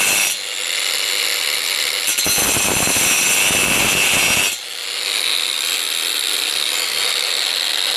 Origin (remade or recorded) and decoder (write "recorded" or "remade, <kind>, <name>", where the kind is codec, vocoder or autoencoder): recorded